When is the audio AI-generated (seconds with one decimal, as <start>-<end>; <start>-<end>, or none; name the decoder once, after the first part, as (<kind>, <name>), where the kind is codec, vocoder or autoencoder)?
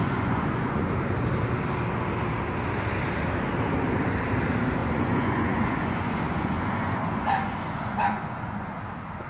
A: 0.0-0.9 (vocoder, Vocos); 4.8-8.8